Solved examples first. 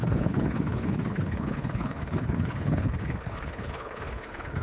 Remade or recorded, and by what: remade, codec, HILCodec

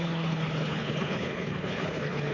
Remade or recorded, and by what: remade, codec, HILCodec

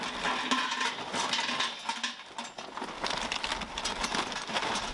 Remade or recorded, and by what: recorded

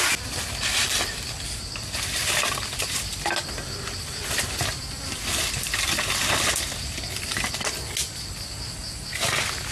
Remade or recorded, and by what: recorded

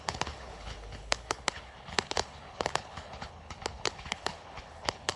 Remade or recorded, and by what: remade, codec, HILCodec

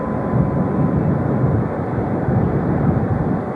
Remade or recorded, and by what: recorded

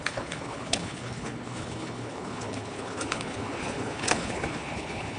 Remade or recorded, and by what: remade, codec, HILCodec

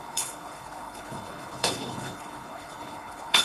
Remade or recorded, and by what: remade, codec, HILCodec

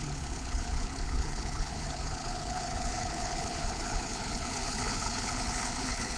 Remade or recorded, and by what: remade, codec, HILCodec